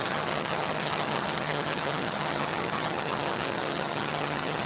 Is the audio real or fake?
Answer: fake